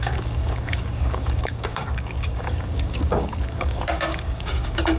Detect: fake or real fake